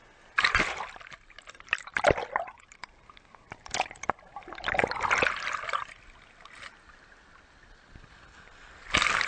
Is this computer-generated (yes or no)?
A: no